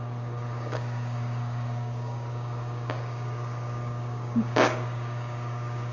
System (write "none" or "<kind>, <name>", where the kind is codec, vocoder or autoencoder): codec, DAC